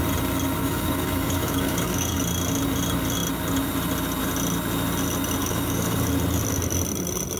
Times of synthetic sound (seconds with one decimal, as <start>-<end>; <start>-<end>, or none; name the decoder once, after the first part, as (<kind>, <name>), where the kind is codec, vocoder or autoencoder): 0.6-2.2 (codec, DAC); 5.4-6.1